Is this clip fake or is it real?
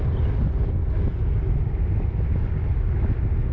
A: real